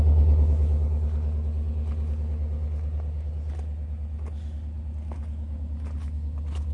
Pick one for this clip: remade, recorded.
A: recorded